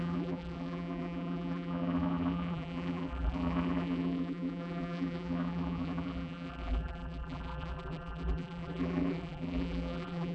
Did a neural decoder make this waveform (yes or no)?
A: yes